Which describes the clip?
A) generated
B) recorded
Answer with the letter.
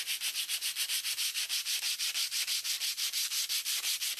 B